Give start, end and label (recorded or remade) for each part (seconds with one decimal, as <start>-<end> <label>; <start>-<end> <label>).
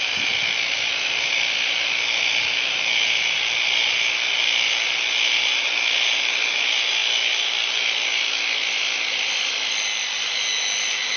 0.0-11.2 recorded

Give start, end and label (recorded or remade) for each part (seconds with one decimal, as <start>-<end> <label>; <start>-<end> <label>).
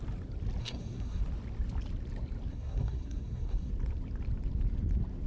0.0-0.6 recorded; 0.6-1.2 remade; 1.2-2.5 recorded; 2.5-3.7 remade; 3.7-5.3 recorded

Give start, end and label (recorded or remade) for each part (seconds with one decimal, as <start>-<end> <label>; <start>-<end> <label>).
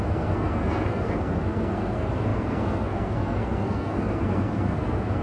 0.0-5.2 remade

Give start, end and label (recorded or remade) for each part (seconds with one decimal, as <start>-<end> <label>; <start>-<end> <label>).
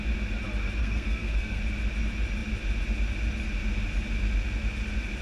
0.0-0.8 recorded; 0.8-1.6 remade; 1.6-5.2 recorded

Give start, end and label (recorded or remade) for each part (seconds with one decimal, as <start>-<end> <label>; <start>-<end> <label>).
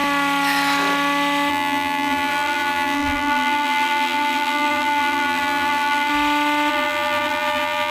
0.0-1.5 recorded; 1.5-6.1 remade; 6.1-6.7 recorded; 6.7-7.9 remade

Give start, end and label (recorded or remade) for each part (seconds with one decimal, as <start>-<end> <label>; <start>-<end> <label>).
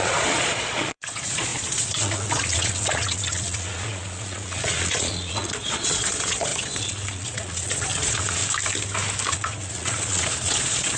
0.0-8.4 remade; 8.4-9.3 recorded; 9.3-11.0 remade